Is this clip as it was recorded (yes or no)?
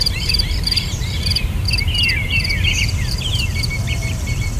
no